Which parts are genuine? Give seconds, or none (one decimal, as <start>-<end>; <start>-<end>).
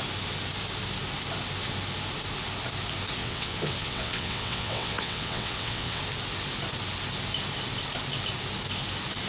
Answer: 0.0-3.2; 6.0-9.3